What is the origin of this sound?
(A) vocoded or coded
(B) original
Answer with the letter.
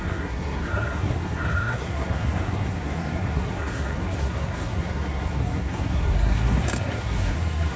A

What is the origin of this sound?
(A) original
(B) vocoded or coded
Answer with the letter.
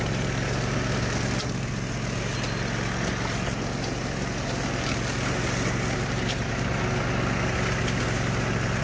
A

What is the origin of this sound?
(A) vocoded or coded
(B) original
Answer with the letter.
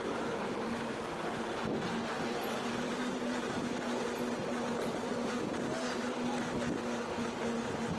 B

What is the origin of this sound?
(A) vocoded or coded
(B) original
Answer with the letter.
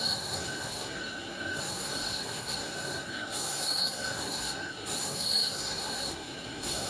A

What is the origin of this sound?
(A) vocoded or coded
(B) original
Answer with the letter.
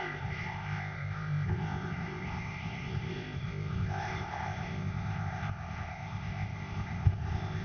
A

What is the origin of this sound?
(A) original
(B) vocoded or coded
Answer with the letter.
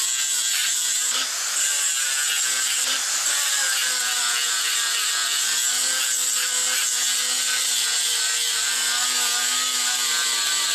B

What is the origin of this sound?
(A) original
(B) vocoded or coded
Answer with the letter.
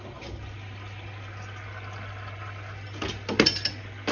A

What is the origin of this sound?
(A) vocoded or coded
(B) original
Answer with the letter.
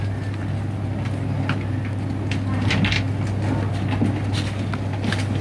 B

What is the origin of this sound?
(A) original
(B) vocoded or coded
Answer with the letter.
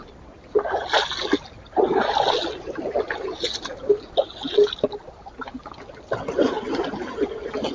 A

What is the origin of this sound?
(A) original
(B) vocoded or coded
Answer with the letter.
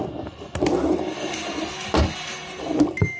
A